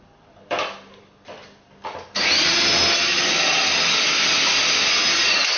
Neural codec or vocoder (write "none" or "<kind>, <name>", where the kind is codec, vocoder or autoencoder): none